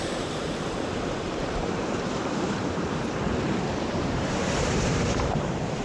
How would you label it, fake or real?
fake